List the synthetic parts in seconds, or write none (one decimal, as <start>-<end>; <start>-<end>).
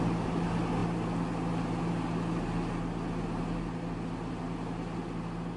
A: none